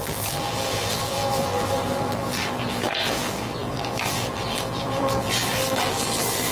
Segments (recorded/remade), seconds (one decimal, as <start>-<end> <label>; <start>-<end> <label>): 0.0-6.5 remade